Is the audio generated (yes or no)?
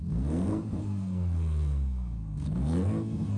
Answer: yes